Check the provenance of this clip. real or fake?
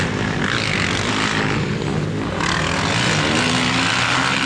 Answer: real